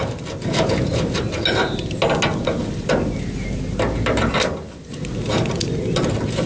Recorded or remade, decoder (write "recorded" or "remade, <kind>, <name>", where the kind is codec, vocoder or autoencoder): recorded